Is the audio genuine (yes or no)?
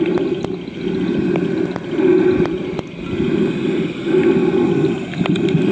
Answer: yes